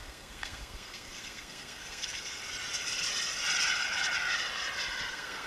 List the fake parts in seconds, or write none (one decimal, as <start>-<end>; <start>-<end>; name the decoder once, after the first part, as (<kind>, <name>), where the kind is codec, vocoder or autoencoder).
0.0-2.4 (codec, SNAC); 5.1-5.5